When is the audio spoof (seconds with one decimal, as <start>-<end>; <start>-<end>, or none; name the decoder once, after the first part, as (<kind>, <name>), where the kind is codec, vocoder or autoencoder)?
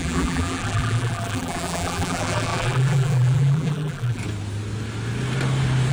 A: 0.0-4.2 (vocoder, BigVGAN v2)